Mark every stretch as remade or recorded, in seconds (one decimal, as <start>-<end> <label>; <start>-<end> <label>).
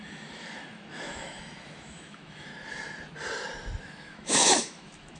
0.0-2.5 remade; 2.5-3.8 recorded; 3.8-5.2 remade